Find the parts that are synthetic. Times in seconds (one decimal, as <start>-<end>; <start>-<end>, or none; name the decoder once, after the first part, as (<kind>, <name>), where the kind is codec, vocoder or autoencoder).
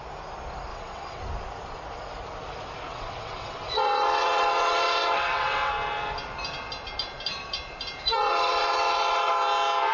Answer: 0.7-1.2 (vocoder, WaveNeXt); 2.9-5.7; 8.2-9.3